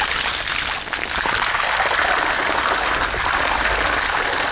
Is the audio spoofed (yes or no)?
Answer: no